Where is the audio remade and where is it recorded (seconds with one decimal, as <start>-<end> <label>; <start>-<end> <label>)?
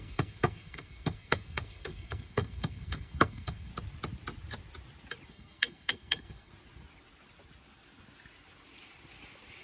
0.0-3.7 remade; 3.7-5.3 recorded; 5.3-6.5 remade; 6.5-9.6 recorded